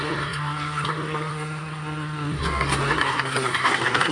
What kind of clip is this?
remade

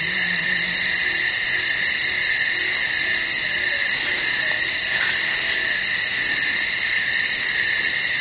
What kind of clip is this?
recorded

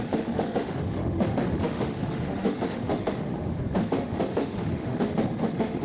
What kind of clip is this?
remade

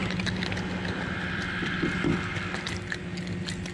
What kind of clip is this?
recorded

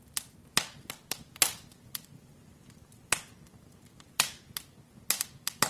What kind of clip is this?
recorded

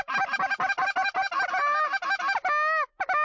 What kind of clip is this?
recorded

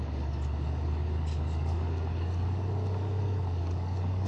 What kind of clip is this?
remade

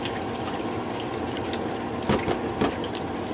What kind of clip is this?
recorded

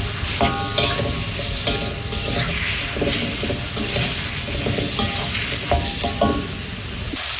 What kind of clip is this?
recorded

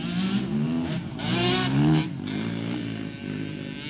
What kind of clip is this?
recorded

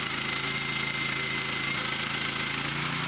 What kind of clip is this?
recorded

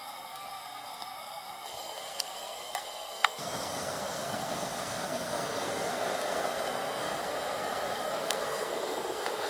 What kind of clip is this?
remade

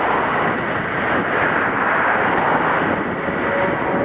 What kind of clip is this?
recorded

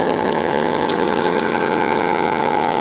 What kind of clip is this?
remade